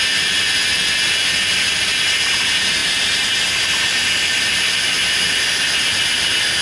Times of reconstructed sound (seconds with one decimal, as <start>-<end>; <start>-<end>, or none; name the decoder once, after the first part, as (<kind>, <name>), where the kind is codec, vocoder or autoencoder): none